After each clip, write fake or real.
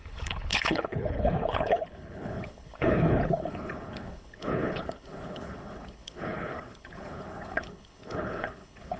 fake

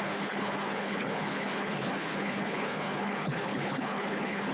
fake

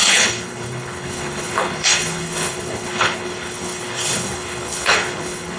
fake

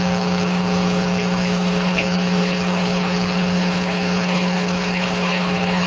fake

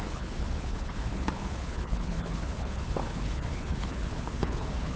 fake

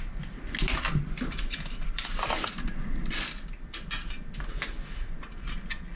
real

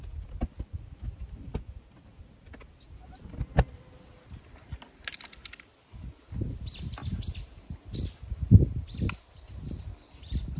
real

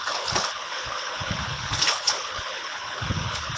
fake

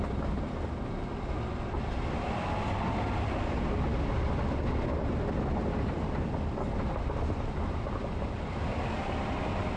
real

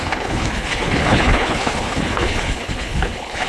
fake